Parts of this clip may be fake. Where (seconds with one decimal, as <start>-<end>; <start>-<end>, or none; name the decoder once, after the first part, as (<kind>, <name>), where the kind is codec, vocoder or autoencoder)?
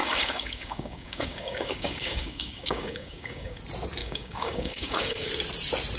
0.0-3.6 (codec, DAC); 4.0-5.3